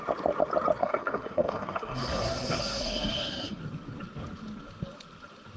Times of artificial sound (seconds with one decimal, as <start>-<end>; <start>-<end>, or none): 0.8-3.6